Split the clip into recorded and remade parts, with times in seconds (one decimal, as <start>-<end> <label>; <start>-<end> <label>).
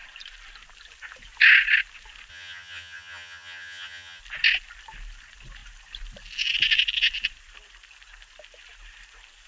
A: 0.0-2.3 recorded; 2.3-4.2 remade; 4.2-9.5 recorded